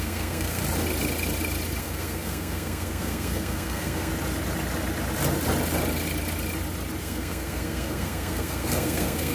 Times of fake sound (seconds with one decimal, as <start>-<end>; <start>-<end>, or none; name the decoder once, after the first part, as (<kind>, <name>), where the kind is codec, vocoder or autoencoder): 0.0-0.6 (codec, SNAC); 1.8-4.1; 7.0-9.3